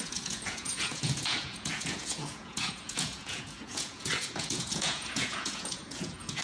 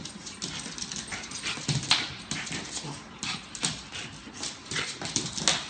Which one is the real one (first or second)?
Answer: second